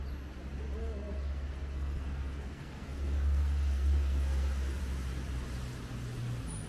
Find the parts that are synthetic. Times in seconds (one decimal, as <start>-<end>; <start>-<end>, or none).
0.8-4.8